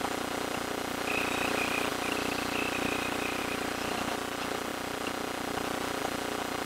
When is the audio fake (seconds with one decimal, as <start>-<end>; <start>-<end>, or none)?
none